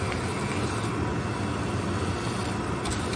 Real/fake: real